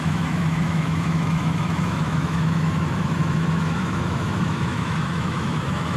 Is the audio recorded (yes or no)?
no